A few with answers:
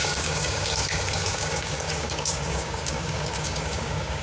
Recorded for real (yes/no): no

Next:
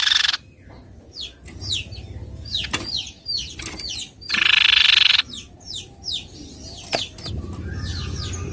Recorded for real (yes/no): yes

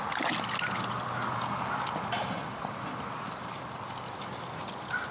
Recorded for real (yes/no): yes